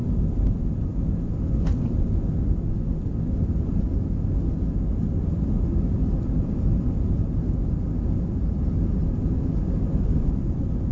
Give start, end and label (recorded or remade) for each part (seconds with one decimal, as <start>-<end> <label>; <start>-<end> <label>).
0.0-10.9 recorded